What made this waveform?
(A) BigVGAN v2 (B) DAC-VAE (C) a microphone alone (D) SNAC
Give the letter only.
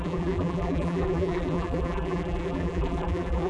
A